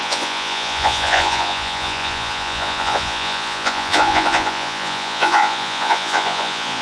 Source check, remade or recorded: remade